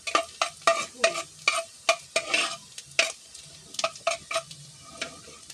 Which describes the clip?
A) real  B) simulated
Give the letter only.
A